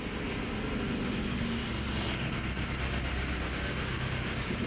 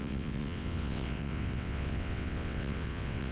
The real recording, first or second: first